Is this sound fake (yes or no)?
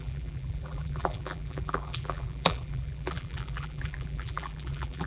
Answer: yes